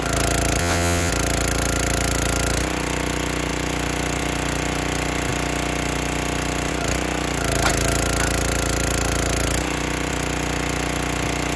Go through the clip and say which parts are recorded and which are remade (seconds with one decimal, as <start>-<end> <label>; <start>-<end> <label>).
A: 0.0-0.6 recorded; 0.6-1.1 remade; 1.1-11.6 recorded